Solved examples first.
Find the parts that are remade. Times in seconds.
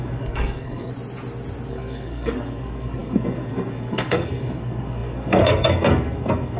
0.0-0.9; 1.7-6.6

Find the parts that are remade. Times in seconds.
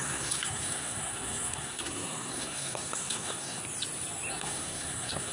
0.0-3.6; 4.3-5.3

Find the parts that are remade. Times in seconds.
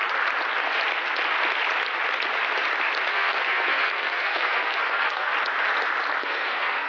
3.1-5.3; 6.2-6.9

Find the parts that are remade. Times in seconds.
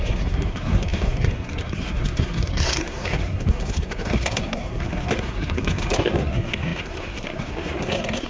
0.0-8.3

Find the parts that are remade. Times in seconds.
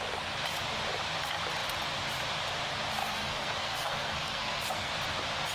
3.0-4.9